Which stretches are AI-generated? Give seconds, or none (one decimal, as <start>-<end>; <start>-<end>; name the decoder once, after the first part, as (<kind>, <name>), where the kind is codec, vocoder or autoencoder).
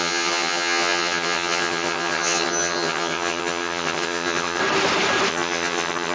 0.0-4.6 (vocoder, HiFi-GAN); 5.3-6.1